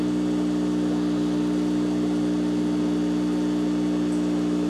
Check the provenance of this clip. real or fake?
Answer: real